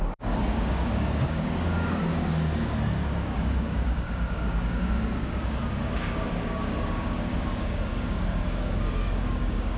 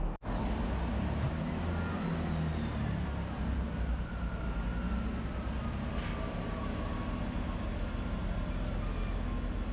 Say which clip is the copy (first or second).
first